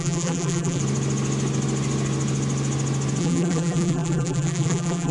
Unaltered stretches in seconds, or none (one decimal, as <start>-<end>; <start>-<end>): 0.8-3.2